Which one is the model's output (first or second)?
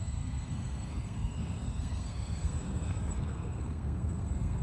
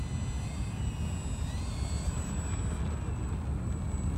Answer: first